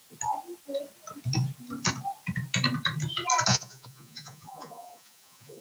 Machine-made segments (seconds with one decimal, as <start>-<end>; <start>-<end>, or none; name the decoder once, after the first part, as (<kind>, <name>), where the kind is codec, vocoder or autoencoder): 3.5-5.6 (vocoder, Vocos)